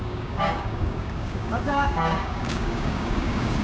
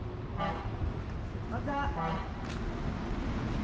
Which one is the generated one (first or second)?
first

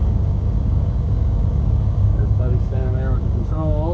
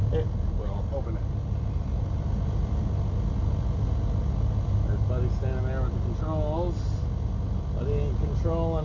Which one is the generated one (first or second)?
first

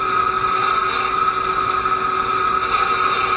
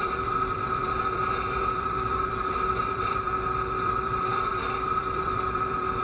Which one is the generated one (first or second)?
second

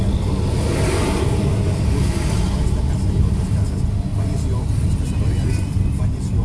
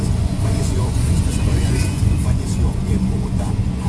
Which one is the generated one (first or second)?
second